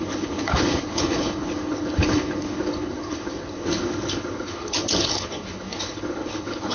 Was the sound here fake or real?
fake